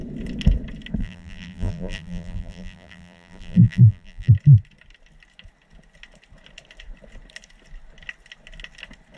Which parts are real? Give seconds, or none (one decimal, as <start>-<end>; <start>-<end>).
0.0-1.0; 4.3-9.2

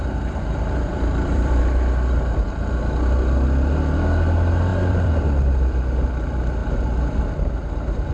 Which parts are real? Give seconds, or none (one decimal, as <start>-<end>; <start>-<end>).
0.0-0.9; 1.6-4.7; 5.8-8.1

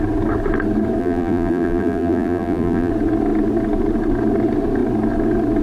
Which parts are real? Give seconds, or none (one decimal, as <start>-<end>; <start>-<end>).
0.0-1.0; 2.9-5.6